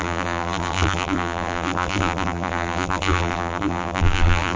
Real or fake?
fake